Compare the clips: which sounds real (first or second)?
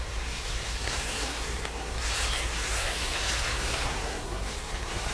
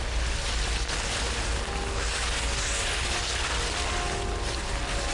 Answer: second